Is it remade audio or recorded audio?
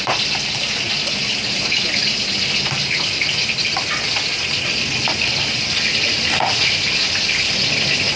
recorded